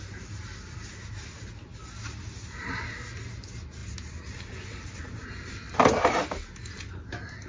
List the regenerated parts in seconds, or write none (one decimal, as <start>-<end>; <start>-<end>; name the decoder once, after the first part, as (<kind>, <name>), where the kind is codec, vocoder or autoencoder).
3.8-6.3 (vocoder, BigVGAN v2)